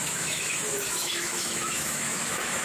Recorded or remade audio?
remade